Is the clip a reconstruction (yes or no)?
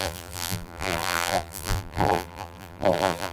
yes